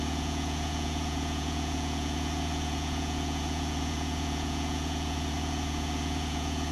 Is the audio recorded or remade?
remade